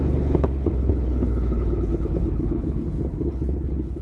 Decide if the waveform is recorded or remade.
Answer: remade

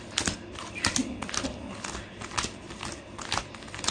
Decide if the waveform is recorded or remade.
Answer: recorded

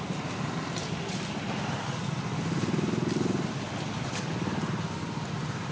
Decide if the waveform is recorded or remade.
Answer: recorded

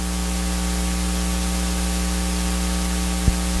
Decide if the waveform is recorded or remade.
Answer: recorded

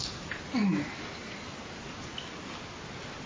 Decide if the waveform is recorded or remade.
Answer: recorded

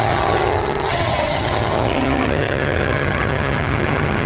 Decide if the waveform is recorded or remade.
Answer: remade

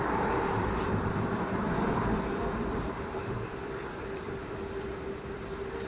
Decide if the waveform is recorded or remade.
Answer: remade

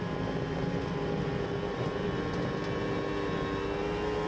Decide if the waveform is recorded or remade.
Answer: recorded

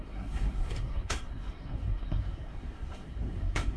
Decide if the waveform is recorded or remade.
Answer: remade